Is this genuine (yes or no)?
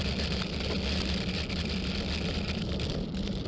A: yes